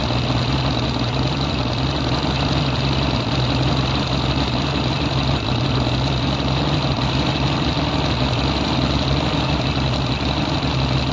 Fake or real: real